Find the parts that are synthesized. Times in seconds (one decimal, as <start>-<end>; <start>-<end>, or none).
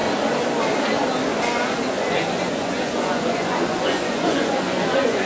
1.9-5.3